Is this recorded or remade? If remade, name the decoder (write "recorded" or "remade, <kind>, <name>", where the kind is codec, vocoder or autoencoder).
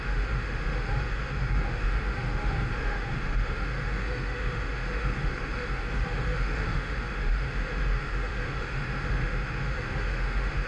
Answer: remade, autoencoder, DAC-VAE